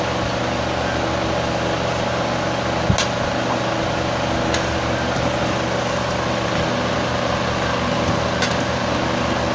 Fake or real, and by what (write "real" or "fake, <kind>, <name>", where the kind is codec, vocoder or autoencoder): real